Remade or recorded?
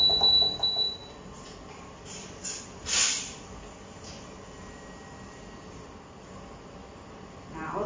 recorded